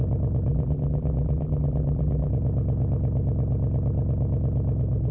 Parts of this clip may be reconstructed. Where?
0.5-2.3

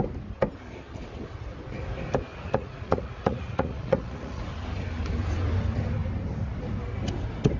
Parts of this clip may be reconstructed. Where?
2.3-4.4